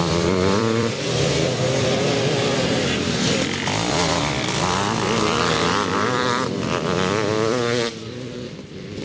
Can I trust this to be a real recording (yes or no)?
no